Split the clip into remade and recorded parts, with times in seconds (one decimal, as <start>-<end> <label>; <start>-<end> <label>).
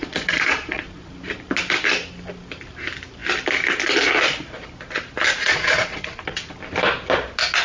0.0-1.1 remade; 1.1-5.4 recorded; 5.4-6.5 remade; 6.5-7.6 recorded